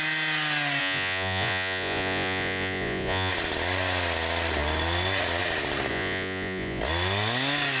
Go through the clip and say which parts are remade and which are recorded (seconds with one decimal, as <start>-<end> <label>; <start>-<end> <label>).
0.0-0.8 recorded; 0.8-3.3 remade; 3.3-5.9 recorded; 5.9-6.8 remade; 6.8-7.8 recorded